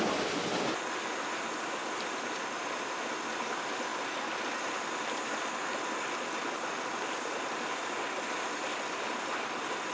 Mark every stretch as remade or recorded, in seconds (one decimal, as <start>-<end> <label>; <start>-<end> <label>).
0.0-9.9 recorded